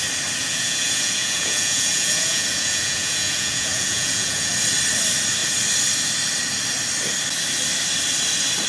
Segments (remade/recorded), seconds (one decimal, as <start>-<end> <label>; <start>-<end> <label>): 0.0-0.4 recorded; 0.4-4.5 remade; 4.5-8.7 recorded